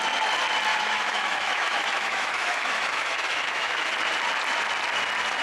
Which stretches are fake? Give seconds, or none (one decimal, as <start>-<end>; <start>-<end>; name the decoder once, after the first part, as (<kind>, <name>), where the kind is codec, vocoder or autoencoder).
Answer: 0.7-3.9 (autoencoder, DAC-VAE)